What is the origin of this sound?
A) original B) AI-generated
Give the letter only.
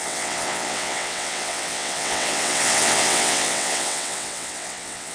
B